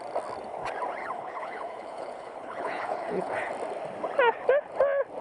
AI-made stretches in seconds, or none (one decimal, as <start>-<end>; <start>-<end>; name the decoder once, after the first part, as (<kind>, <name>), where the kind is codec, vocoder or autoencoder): 1.0-3.5 (codec, HILCodec)